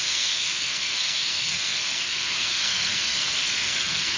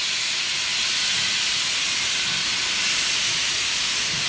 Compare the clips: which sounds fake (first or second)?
first